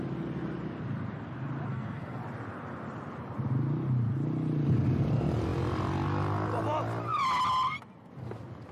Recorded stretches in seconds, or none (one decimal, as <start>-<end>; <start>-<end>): 0.0-1.7; 2.2-8.7